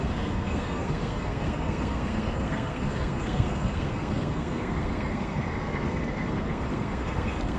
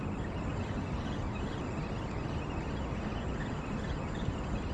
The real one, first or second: second